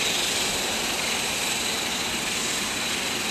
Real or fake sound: real